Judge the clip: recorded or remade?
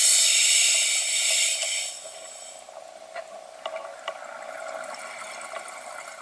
recorded